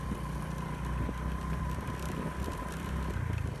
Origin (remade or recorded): remade